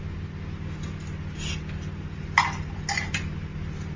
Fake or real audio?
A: real